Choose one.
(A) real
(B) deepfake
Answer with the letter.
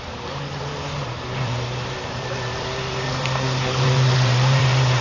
B